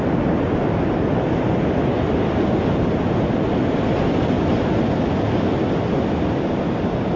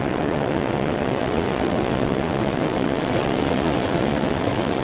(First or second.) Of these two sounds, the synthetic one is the second